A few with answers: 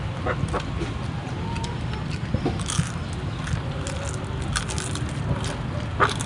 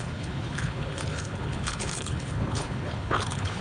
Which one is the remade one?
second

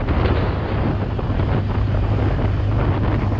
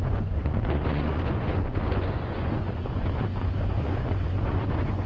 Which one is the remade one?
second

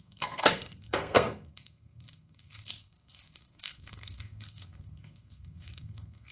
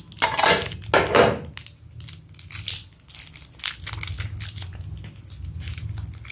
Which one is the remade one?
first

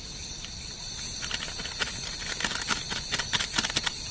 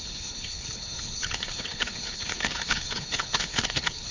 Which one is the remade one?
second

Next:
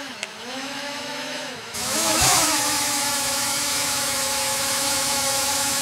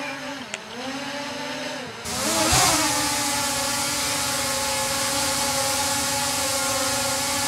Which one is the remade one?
first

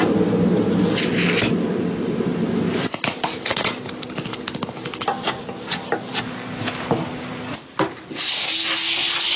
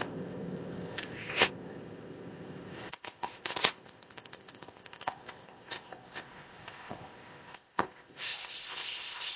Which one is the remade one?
second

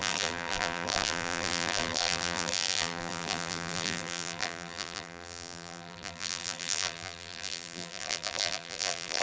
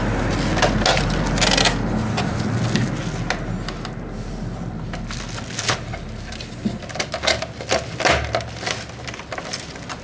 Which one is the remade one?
first